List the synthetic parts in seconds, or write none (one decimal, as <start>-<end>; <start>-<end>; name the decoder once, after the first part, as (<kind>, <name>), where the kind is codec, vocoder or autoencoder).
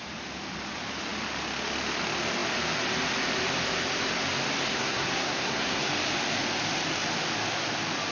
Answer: 4.7-5.8 (codec, SNAC)